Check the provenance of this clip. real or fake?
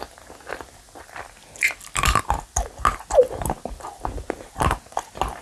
real